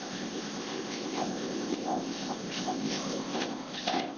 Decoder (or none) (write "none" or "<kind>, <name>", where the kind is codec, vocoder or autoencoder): codec, ZipCodec